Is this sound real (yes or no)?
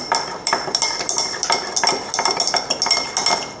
yes